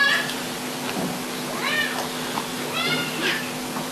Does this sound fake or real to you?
fake